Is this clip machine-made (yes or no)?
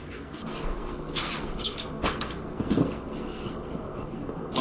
yes